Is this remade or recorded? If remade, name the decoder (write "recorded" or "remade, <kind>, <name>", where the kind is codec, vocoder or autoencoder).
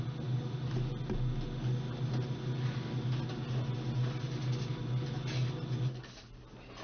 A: recorded